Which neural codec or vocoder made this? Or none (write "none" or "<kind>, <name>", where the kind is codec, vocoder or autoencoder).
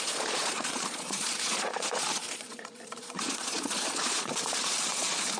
vocoder, Vocos